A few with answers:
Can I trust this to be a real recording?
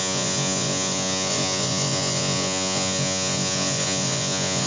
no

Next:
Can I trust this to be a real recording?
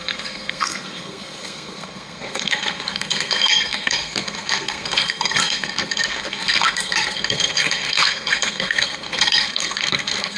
no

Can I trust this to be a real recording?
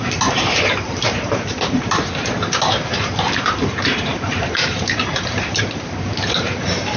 no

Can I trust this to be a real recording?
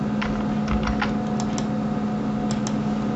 yes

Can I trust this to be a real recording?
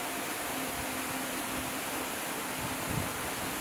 yes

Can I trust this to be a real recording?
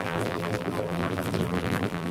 no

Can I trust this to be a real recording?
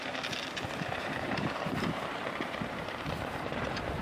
no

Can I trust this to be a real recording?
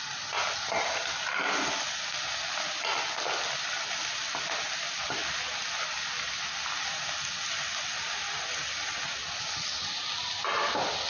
yes